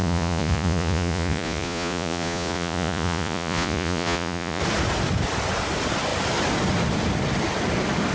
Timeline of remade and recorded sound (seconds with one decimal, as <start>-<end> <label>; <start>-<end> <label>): 0.0-4.6 remade; 4.6-8.1 recorded

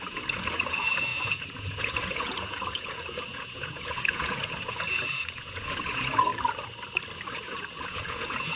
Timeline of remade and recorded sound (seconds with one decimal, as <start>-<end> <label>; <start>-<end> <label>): 0.0-6.3 remade; 6.3-7.3 recorded; 7.3-8.6 remade

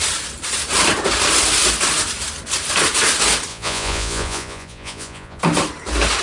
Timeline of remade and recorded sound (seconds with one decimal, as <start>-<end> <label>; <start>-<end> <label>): 0.0-3.5 recorded; 3.5-5.4 remade; 5.4-6.2 recorded